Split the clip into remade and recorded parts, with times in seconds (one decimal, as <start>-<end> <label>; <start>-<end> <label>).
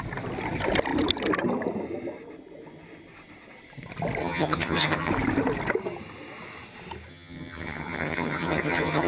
0.0-4.2 recorded; 4.2-5.1 remade; 5.1-7.1 recorded; 7.1-9.1 remade